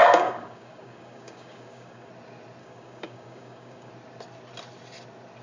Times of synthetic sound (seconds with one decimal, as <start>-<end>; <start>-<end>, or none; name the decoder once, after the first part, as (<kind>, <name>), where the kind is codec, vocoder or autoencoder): 0.0-2.1 (codec, DAC); 2.6-3.9